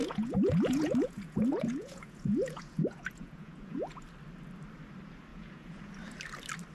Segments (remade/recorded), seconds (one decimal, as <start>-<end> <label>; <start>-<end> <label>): 0.0-4.0 remade; 4.0-5.3 recorded; 5.3-5.9 remade; 5.9-6.7 recorded